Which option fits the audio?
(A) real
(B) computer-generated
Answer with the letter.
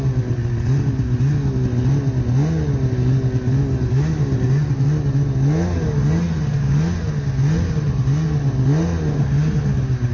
A